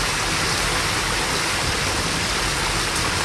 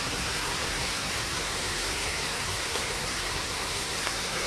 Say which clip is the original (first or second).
first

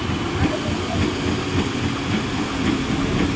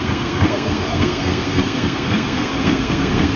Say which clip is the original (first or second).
first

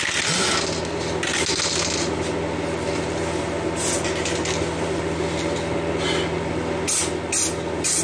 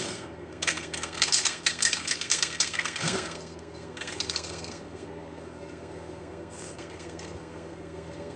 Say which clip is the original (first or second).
first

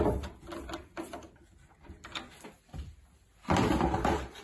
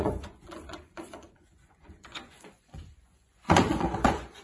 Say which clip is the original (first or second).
first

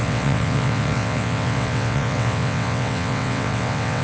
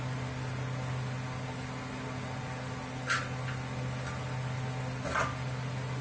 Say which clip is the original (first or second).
second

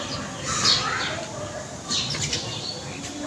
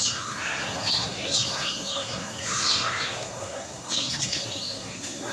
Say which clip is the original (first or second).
first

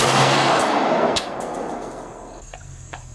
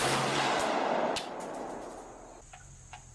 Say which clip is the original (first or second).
second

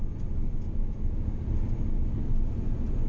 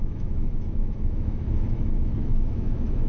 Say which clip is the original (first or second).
first